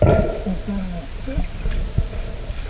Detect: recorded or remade recorded